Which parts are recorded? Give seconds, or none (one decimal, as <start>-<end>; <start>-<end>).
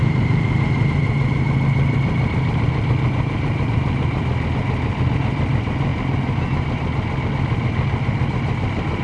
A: 0.0-9.0